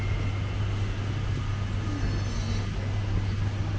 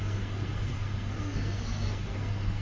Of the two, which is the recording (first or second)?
first